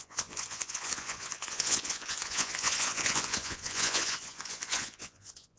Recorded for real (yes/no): no